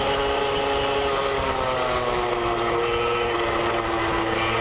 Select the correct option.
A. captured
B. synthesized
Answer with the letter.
A